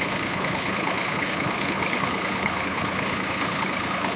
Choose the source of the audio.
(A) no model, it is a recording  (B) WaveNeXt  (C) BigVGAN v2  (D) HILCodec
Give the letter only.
D